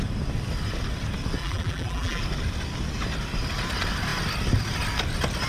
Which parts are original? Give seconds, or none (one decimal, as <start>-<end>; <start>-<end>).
0.0-1.4; 2.2-5.5